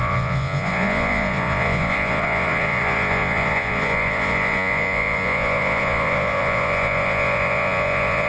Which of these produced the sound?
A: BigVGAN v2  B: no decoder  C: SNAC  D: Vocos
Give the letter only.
D